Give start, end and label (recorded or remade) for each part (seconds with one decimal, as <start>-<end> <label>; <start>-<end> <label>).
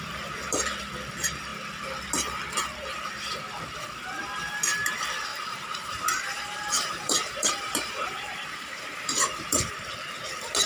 0.0-5.3 recorded; 5.3-9.7 remade; 9.7-10.7 recorded